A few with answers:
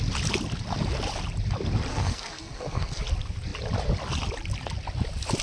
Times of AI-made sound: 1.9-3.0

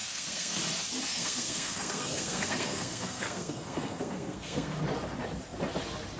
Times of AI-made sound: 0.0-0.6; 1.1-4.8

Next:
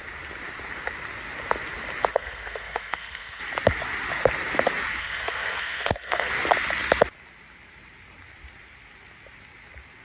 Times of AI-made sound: 2.1-3.4; 5.0-6.3

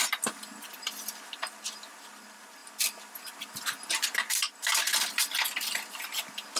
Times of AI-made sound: none

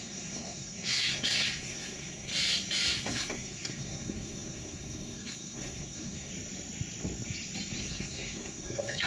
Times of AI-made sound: 0.0-2.3; 3.0-6.3; 7.8-9.1

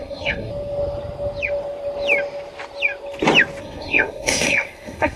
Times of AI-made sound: 0.0-0.5; 3.6-5.2

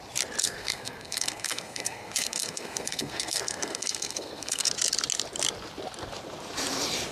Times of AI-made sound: 0.4-4.7

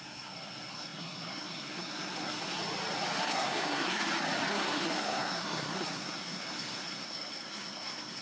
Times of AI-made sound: 0.0-2.6; 3.2-4.0; 4.5-8.2